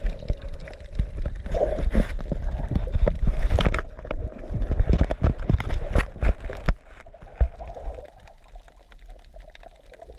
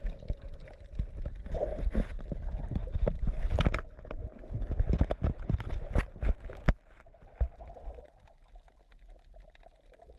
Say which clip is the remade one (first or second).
first